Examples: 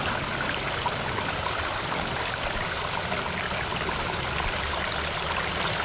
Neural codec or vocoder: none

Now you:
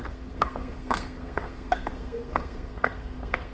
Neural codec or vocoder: codec, SNAC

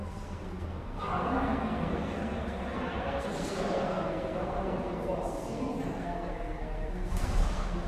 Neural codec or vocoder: codec, SNAC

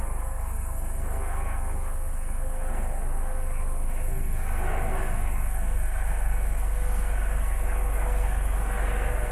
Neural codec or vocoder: codec, SNAC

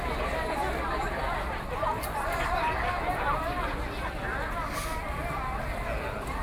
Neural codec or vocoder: none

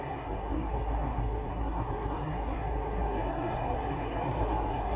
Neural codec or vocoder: codec, SNAC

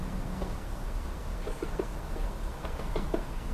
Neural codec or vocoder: codec, SNAC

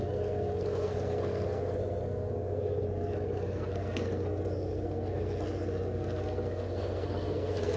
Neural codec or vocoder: codec, SNAC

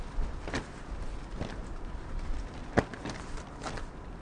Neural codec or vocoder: none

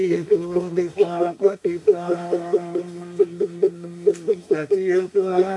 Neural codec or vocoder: codec, SNAC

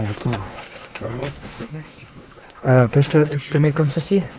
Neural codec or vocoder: codec, SNAC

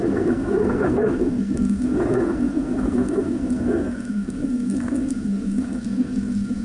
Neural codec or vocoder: codec, SNAC